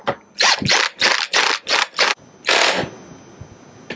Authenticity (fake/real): real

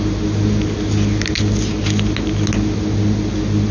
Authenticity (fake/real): real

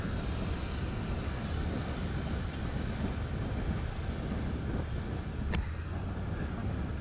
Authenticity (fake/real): real